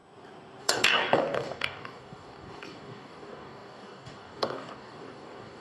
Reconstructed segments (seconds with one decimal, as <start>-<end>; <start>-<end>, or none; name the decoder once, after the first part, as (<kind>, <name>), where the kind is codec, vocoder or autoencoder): 0.6-5.6 (codec, DAC)